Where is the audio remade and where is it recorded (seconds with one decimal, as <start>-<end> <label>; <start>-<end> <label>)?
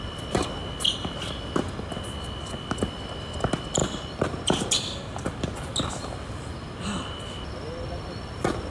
0.0-8.7 recorded